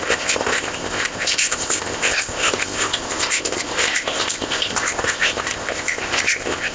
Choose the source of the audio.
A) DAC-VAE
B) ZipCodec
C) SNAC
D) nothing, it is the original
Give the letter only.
B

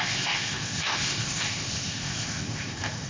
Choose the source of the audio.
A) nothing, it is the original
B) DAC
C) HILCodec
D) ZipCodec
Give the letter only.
D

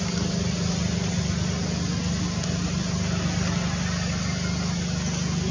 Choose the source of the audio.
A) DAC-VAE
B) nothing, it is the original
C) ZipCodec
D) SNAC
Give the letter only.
B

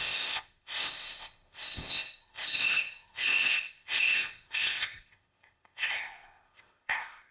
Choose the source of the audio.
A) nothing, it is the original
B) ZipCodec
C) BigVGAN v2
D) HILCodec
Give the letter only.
B